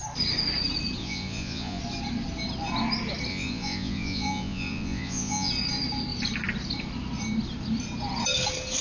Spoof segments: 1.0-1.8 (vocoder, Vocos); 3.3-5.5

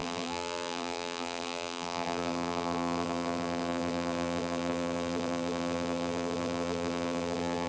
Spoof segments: 0.0-7.7 (vocoder, BigVGAN v2)

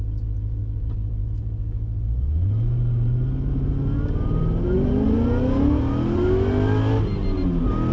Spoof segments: none

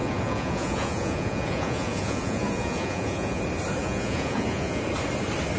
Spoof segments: 0.0-3.4 (vocoder, Vocos); 3.8-4.8

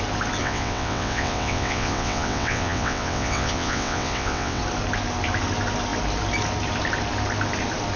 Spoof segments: 0.4-4.6 (vocoder, WaveNeXt)